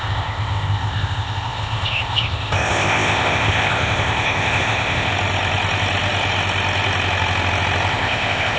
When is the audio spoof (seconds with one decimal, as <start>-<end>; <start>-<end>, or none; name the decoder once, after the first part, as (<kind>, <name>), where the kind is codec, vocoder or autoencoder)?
0.0-5.1 (codec, ZipCodec); 7.9-8.6